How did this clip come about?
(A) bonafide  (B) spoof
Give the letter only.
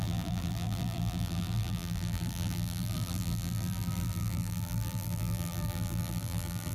B